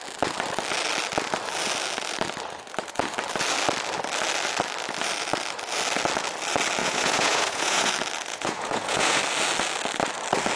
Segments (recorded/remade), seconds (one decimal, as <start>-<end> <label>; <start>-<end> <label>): 0.0-6.8 recorded; 6.8-7.9 remade; 7.9-8.3 recorded; 8.3-9.2 remade; 9.2-10.6 recorded